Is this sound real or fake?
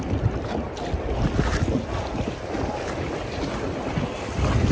real